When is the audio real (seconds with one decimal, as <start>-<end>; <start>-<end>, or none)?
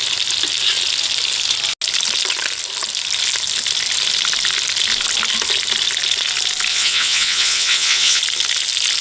0.0-6.7; 8.2-9.0